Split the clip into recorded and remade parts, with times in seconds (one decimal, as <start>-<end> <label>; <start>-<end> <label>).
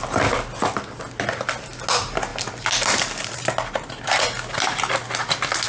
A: 0.0-5.7 recorded